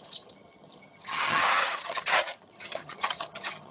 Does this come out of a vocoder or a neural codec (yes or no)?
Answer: yes